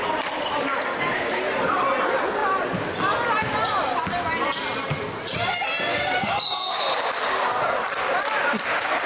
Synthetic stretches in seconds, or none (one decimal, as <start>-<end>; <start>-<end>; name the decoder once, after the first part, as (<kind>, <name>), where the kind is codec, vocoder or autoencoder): 0.7-1.4 (codec, DAC); 5.9-6.8